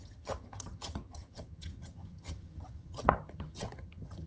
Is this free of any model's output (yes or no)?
no